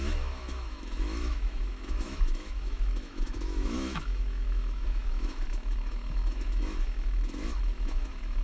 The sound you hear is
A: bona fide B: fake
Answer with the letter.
B